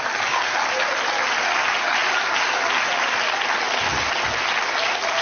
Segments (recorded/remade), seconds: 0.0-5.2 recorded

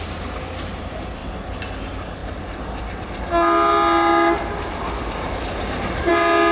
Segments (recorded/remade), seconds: 0.0-6.5 recorded

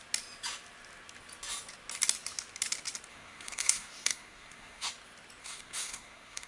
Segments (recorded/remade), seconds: 0.0-3.1 recorded; 3.1-4.9 remade; 4.9-5.4 recorded; 5.4-6.5 remade

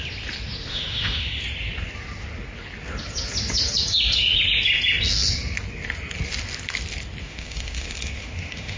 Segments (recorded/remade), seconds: 0.0-0.7 recorded; 0.7-1.4 remade; 1.4-7.2 recorded; 7.2-8.8 remade